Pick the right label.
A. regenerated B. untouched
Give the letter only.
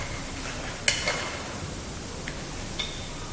B